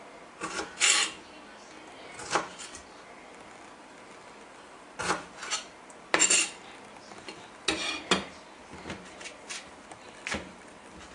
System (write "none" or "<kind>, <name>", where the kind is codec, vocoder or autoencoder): none